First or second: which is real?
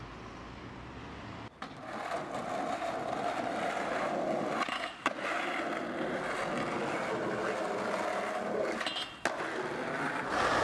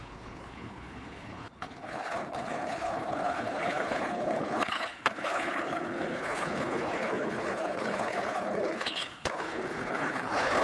first